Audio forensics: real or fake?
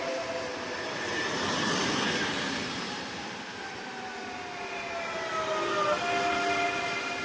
real